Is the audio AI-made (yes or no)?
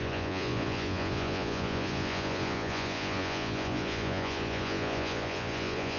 yes